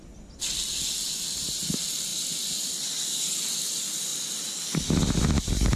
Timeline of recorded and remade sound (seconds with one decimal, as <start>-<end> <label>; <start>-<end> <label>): 0.0-5.8 recorded